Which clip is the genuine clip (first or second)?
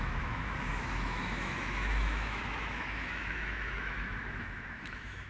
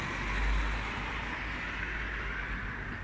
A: second